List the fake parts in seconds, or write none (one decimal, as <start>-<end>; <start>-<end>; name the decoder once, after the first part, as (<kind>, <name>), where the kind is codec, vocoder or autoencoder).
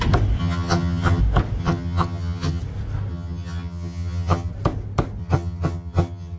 0.4-1.2 (vocoder, HiFi-GAN); 1.6-2.6; 3.1-4.5; 5.2-6.4